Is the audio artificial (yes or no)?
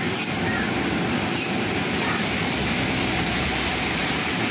no